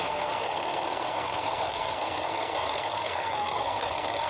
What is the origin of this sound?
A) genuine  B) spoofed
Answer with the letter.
B